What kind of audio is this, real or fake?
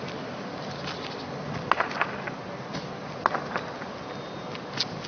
real